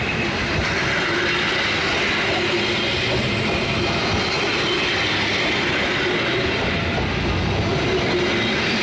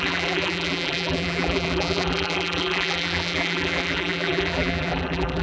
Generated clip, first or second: second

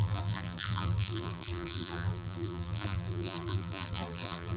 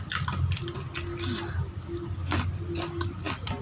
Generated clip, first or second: first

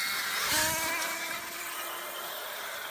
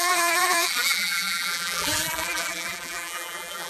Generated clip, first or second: second